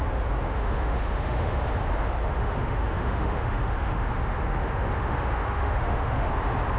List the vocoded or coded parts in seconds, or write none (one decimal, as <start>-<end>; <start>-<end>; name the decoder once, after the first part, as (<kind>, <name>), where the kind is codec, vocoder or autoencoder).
0.4-1.6 (autoencoder, DAC-VAE); 2.2-6.3